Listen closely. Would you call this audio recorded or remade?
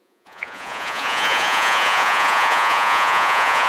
remade